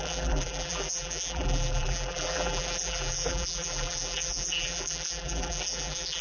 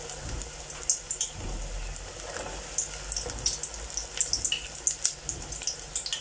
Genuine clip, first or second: second